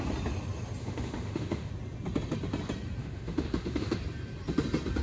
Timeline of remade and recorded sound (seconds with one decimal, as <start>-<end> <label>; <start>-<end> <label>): 0.0-0.8 recorded; 0.8-1.7 remade; 1.7-3.0 recorded; 3.0-4.0 remade; 4.0-5.0 recorded